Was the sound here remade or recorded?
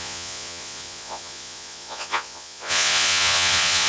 remade